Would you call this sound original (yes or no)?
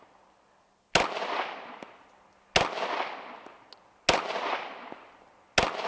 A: yes